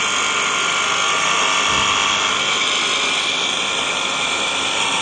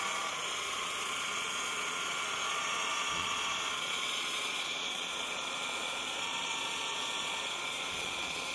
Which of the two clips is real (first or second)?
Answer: first